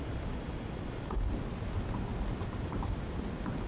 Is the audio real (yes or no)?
yes